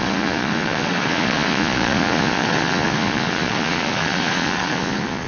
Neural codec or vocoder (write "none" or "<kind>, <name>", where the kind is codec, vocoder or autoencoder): vocoder, Vocos